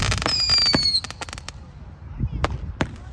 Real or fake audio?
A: real